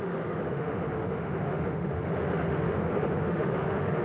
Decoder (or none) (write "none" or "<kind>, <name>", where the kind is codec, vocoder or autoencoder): autoencoder, DAC-VAE